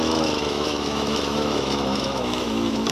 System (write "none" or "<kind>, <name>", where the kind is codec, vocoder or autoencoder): autoencoder, DAC-VAE